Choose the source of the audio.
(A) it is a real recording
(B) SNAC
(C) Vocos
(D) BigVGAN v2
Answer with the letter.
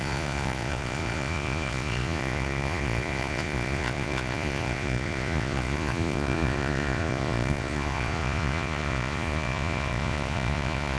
C